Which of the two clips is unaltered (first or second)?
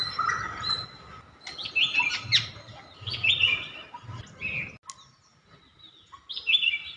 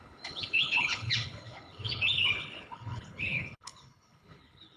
first